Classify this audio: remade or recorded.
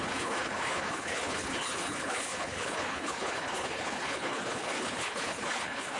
remade